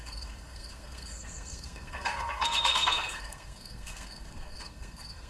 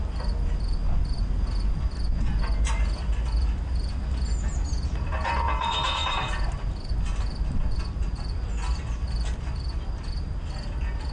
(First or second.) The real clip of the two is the second